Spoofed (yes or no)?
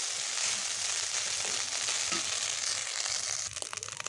no